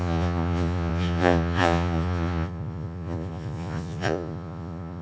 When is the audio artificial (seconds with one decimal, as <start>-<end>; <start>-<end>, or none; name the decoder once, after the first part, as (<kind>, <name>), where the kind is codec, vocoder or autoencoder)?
0.0-5.0 (vocoder, Vocos)